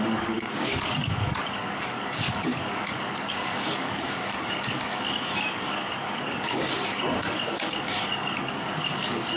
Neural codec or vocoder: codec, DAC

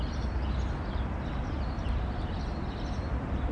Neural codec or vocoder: none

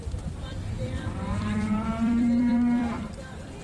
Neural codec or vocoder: vocoder, BigVGAN v2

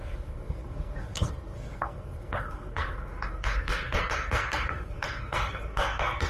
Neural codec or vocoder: codec, SNAC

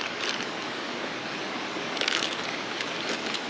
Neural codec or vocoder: codec, DAC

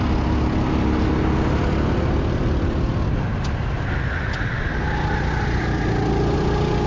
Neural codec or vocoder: none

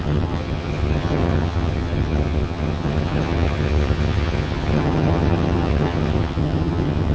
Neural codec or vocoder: vocoder, HiFi-GAN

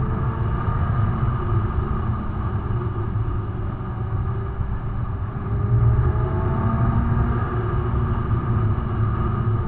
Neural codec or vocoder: none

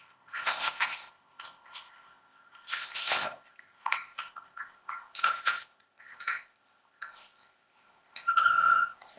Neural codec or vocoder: codec, ZipCodec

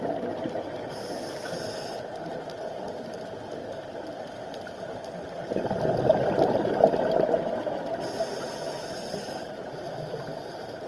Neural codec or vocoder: none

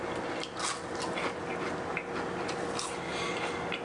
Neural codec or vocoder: none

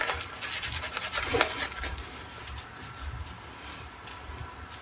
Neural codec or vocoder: none